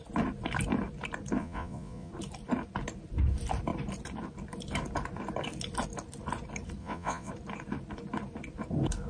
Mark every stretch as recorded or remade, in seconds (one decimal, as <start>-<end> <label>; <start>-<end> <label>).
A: 0.0-1.4 recorded; 1.4-2.1 remade; 2.1-6.8 recorded; 6.8-7.3 remade; 7.3-9.1 recorded